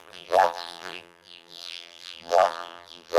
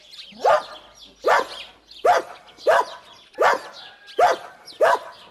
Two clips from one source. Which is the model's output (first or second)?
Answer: first